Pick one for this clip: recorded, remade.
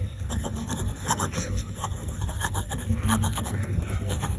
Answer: remade